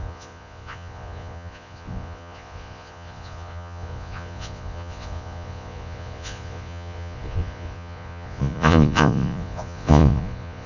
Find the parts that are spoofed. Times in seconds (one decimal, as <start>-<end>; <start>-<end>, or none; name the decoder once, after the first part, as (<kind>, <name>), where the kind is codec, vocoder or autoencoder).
0.0-10.7 (vocoder, Vocos)